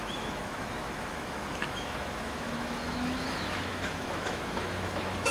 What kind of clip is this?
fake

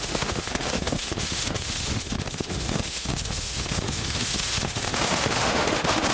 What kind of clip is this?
fake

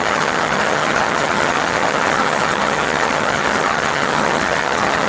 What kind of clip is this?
fake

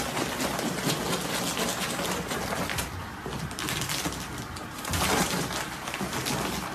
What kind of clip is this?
real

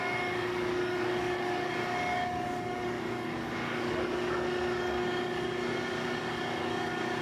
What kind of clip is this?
fake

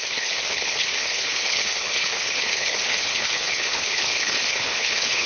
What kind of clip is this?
fake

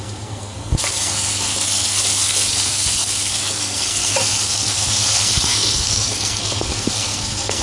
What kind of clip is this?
fake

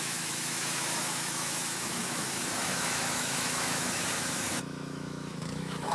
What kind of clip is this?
fake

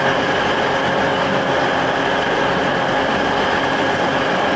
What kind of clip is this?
real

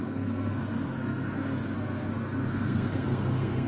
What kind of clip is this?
fake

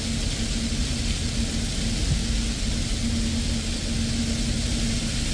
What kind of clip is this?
real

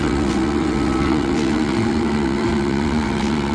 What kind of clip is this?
fake